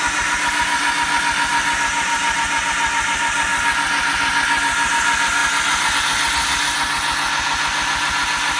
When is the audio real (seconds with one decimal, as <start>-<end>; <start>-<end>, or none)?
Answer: 0.0-8.6